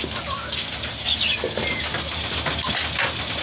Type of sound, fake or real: real